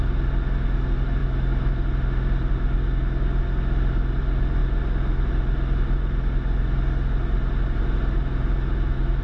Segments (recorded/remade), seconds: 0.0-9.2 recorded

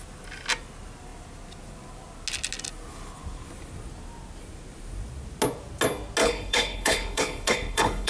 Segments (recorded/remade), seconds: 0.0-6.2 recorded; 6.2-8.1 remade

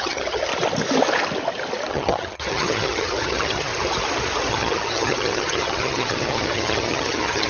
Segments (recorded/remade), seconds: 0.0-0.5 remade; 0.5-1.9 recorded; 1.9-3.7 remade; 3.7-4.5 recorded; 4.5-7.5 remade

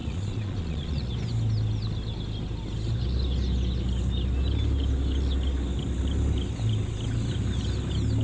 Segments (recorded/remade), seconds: 0.0-1.0 remade; 1.0-8.2 recorded

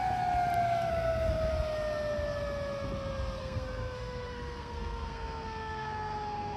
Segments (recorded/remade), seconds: 0.0-0.9 recorded; 0.9-1.5 remade; 1.5-3.4 recorded; 3.4-6.6 remade

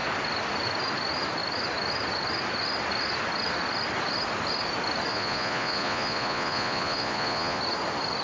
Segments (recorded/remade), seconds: 0.0-5.1 recorded; 5.1-7.6 remade; 7.6-8.2 recorded